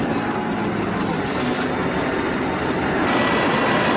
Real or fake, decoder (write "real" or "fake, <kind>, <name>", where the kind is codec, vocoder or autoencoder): real